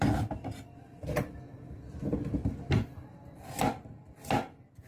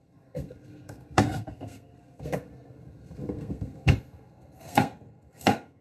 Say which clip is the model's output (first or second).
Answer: second